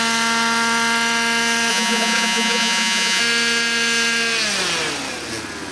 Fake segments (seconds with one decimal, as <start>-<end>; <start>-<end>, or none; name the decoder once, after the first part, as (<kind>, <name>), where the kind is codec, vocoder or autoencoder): 1.7-3.2 (vocoder, Vocos)